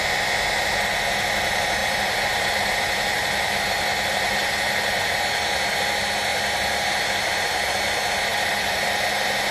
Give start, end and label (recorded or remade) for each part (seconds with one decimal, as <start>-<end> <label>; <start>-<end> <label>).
0.0-1.8 recorded; 1.8-5.2 remade; 5.2-6.3 recorded; 6.3-7.7 remade; 7.7-8.3 recorded; 8.3-8.9 remade; 8.9-9.5 recorded